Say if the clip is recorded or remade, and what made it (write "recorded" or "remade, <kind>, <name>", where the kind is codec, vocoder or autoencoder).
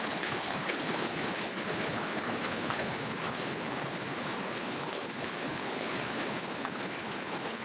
remade, codec, HILCodec